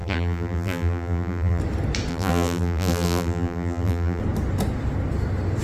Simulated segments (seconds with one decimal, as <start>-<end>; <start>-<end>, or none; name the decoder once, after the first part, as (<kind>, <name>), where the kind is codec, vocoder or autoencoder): 0.0-1.6 (vocoder, BigVGAN v2); 2.1-4.2